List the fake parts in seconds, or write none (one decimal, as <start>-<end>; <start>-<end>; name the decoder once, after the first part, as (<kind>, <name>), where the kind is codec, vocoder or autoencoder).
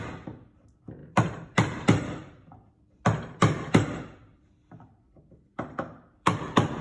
1.0-2.8 (vocoder, BigVGAN v2); 4.3-6.8